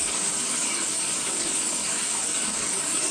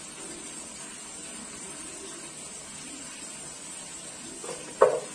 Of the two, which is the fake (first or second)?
first